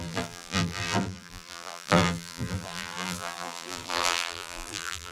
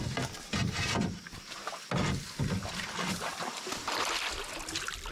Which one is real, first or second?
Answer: second